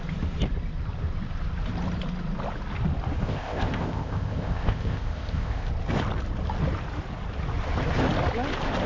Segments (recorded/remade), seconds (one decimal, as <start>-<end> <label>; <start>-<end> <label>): 0.0-3.2 recorded; 3.2-5.7 remade; 5.7-8.9 recorded